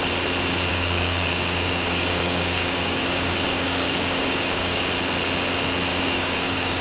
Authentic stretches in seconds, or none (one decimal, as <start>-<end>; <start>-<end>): 0.0-0.7; 4.8-5.9